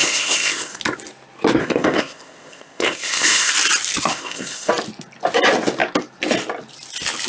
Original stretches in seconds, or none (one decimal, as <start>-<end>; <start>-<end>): 0.8-1.6; 3.5-4.1; 4.7-7.3